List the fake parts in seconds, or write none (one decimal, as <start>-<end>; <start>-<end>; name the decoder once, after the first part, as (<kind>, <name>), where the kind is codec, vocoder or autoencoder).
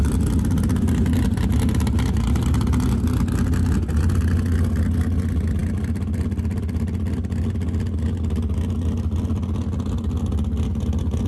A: none